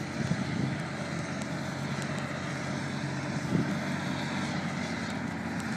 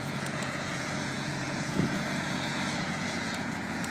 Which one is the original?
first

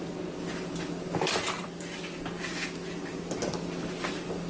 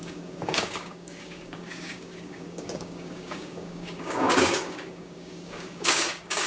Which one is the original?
first